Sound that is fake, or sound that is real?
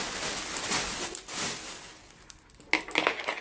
real